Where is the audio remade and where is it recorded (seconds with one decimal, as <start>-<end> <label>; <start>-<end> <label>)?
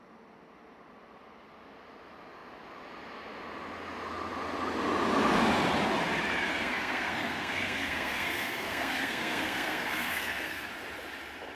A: 0.0-6.5 recorded; 6.5-10.7 remade; 10.7-11.5 recorded